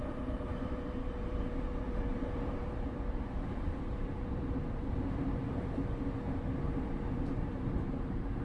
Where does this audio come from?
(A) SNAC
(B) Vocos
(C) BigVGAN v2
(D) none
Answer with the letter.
C